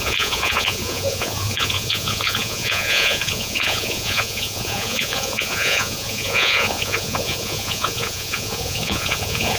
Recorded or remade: remade